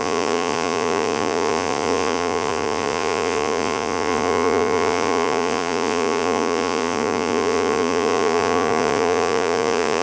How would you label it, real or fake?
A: fake